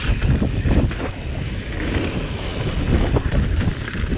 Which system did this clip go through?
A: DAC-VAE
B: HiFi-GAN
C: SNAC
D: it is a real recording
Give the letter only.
D